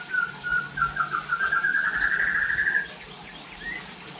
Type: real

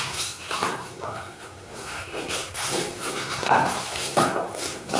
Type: fake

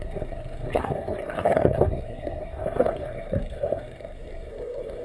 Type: fake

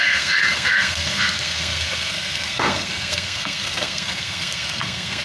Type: fake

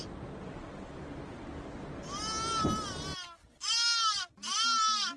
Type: real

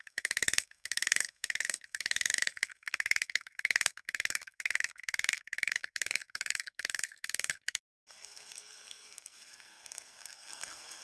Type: fake